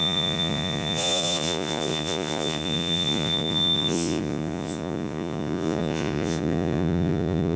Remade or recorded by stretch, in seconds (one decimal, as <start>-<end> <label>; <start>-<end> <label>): 0.0-7.6 remade